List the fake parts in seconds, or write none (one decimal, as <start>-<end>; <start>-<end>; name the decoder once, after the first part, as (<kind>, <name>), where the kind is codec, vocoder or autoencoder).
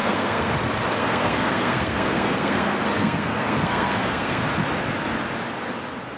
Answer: 0.0-0.5 (codec, SNAC); 1.0-4.4